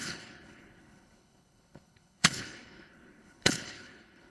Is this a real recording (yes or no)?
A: no